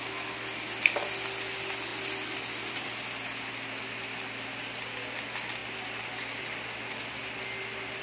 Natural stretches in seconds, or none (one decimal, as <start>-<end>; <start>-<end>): 0.0-8.0

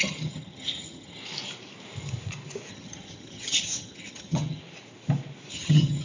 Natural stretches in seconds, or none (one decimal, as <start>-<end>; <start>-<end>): 1.2-2.7; 4.6-5.5

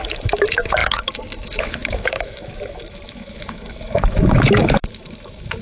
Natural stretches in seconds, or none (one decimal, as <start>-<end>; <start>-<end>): none

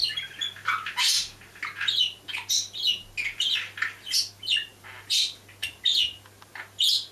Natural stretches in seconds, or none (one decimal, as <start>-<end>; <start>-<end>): 0.0-7.1